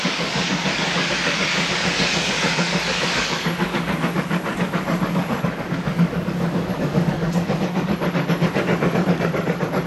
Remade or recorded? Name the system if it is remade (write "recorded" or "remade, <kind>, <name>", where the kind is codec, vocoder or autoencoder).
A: remade, codec, DAC